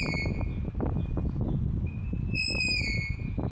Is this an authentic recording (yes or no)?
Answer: yes